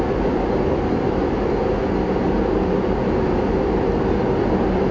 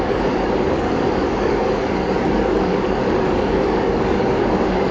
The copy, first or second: second